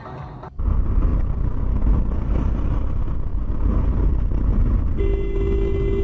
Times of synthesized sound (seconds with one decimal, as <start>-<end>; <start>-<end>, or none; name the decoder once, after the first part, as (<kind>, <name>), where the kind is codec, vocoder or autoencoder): none